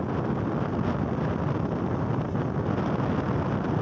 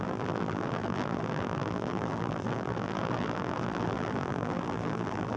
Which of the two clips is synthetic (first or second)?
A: second